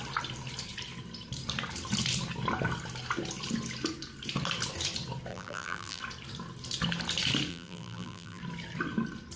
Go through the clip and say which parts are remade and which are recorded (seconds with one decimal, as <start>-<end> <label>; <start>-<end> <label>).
0.0-5.3 recorded; 5.3-6.0 remade; 6.0-7.5 recorded; 7.5-8.4 remade; 8.4-9.4 recorded